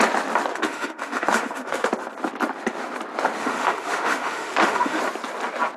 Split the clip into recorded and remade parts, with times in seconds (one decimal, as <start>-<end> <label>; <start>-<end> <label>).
0.0-0.5 recorded; 0.5-1.9 remade; 1.9-3.4 recorded; 3.4-5.0 remade; 5.0-5.8 recorded